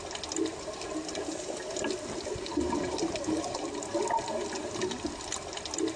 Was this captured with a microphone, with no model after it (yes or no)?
yes